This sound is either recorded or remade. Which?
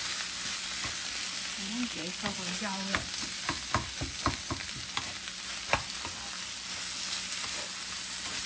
recorded